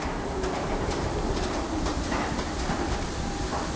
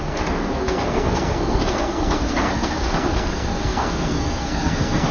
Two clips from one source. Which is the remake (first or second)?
second